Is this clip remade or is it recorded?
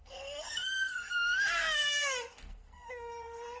remade